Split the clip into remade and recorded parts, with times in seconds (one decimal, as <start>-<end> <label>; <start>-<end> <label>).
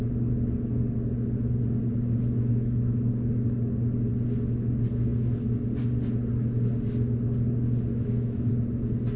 0.0-2.5 recorded; 2.5-3.1 remade; 3.1-7.9 recorded; 7.9-8.5 remade; 8.5-9.2 recorded